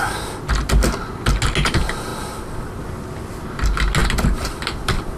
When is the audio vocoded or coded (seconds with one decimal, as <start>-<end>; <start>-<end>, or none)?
2.1-2.8; 4.0-5.2